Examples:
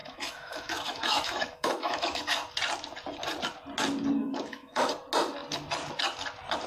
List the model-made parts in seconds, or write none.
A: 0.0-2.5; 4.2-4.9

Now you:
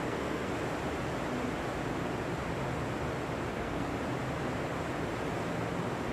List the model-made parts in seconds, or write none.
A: 0.0-0.5; 3.5-3.9

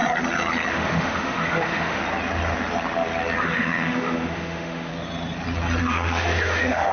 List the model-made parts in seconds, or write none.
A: 0.7-2.0; 3.4-4.9; 5.8-6.9

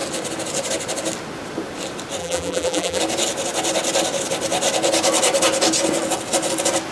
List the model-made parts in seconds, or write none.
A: 2.2-3.0

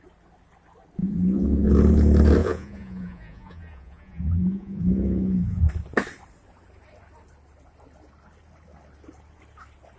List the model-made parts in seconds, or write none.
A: 1.0-1.7; 2.4-5.6

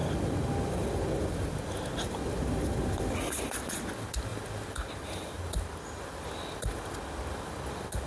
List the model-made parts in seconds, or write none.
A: none

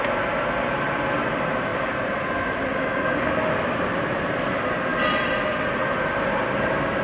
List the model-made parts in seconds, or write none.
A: 2.7-3.3

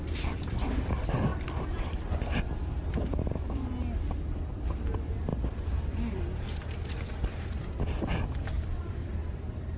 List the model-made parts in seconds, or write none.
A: 0.0-1.3; 2.9-9.8